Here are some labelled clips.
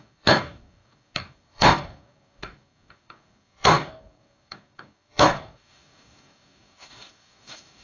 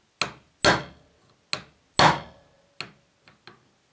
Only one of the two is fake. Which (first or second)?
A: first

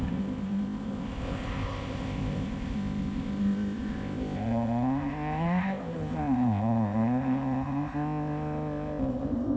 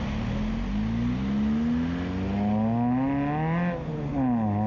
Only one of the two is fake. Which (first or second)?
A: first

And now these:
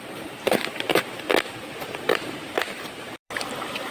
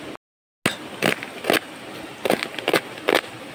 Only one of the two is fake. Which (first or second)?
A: first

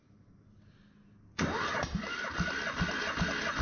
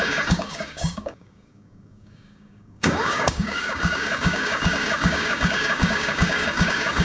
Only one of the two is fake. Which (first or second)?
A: second